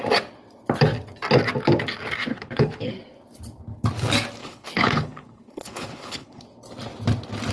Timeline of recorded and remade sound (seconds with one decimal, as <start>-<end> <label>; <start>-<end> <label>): 0.0-2.3 recorded; 2.3-2.9 remade; 2.9-4.4 recorded; 4.4-6.4 remade; 6.4-7.5 recorded